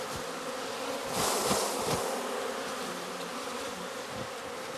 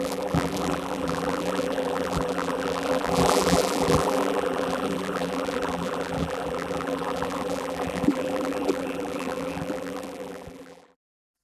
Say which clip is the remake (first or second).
second